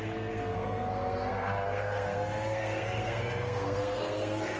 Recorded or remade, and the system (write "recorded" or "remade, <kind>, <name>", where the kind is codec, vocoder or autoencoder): remade, codec, SNAC